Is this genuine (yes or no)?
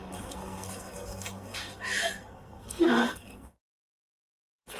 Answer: no